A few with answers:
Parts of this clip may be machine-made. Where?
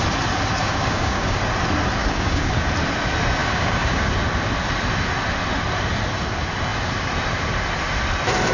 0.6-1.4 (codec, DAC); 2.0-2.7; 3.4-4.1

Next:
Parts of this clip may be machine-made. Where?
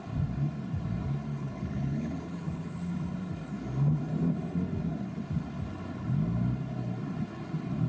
1.3-2.9 (codec, HILCodec)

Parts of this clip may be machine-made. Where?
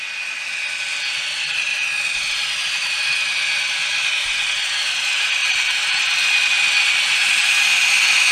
1.7-4.6 (vocoder, BigVGAN v2); 5.4-6.0; 6.6-7.3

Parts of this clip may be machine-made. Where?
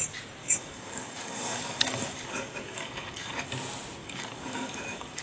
0.4-3.5 (codec, DAC); 4.0-5.2